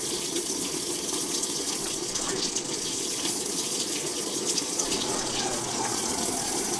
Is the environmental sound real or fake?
fake